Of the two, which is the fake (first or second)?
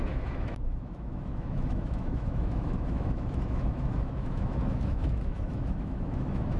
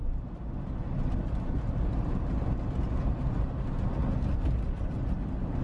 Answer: first